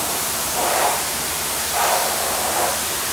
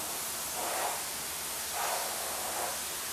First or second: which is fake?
first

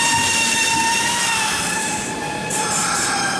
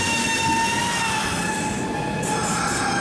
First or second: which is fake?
first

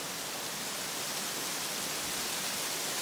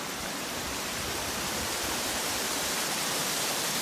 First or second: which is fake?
second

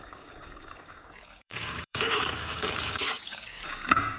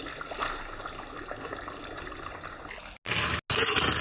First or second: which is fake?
first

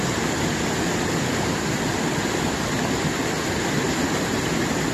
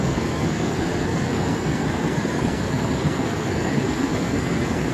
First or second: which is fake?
second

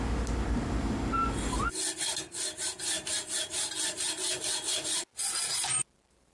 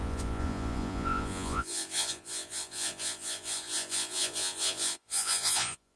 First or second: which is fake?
second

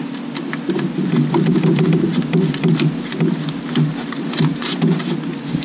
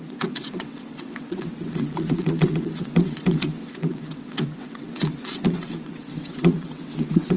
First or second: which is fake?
second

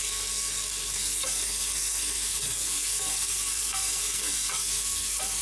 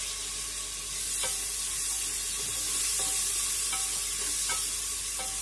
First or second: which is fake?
first